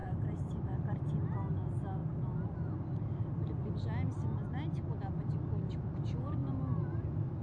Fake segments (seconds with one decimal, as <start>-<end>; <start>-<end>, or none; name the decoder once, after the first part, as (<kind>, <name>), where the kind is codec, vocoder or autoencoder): 0.0-1.0 (vocoder, BigVGAN v2)